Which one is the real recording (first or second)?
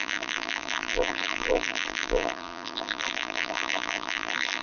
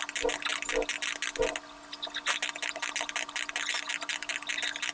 second